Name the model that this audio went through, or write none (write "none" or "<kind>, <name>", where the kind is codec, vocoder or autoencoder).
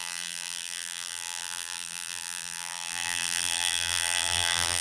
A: vocoder, BigVGAN v2